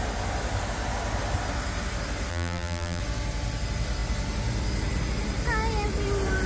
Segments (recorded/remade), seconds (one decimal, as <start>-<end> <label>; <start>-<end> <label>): 0.0-2.3 recorded; 2.3-3.0 remade; 3.0-6.5 recorded